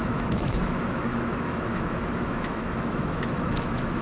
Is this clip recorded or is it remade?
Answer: remade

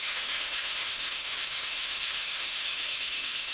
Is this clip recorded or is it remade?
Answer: remade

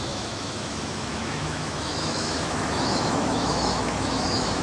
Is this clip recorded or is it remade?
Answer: remade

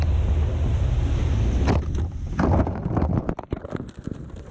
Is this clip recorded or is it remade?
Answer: recorded